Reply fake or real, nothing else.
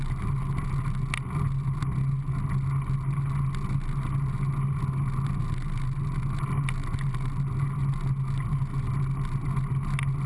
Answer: real